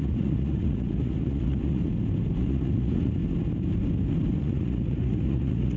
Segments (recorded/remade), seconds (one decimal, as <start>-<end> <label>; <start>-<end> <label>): 0.0-1.8 remade; 1.8-2.4 recorded; 2.4-3.2 remade; 3.2-4.4 recorded; 4.4-5.8 remade